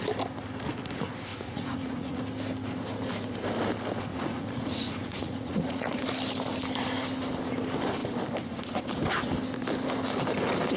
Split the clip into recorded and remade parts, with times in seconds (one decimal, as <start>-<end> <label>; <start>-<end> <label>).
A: 0.0-1.3 recorded; 1.3-2.2 remade; 2.2-4.1 recorded; 4.1-6.0 remade; 6.0-10.8 recorded